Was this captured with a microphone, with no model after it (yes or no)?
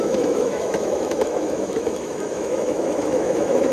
no